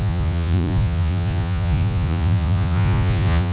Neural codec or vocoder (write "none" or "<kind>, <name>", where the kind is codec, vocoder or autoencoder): vocoder, Vocos